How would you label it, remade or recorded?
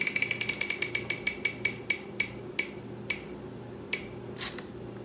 recorded